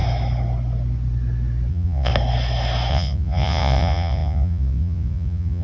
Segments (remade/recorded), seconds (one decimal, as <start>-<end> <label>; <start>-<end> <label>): 0.0-1.7 recorded; 1.7-2.1 remade; 2.1-2.9 recorded; 2.9-5.6 remade